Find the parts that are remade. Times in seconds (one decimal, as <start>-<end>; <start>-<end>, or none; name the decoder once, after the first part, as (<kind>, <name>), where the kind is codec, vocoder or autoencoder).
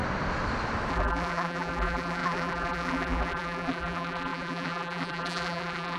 0.9-6.0 (vocoder, BigVGAN v2)